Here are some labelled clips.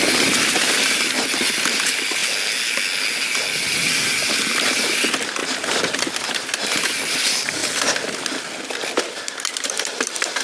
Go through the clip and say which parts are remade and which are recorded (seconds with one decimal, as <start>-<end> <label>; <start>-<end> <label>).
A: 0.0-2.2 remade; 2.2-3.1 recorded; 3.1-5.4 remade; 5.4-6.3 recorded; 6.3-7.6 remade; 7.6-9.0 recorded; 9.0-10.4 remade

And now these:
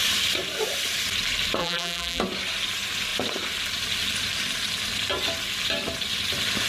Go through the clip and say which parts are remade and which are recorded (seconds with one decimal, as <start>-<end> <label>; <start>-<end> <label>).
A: 0.0-1.6 recorded; 1.6-2.2 remade; 2.2-6.7 recorded

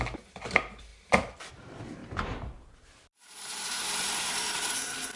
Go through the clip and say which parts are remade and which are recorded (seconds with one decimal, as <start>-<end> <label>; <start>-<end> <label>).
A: 0.0-2.0 recorded; 2.0-5.2 remade